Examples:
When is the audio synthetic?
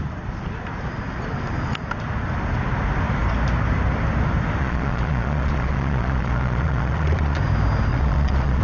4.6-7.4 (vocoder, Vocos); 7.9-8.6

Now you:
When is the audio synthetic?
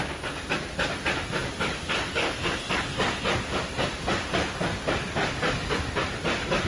none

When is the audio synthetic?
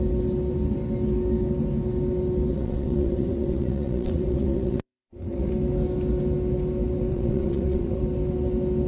2.5-5.5 (vocoder, WaveNeXt); 7.1-8.0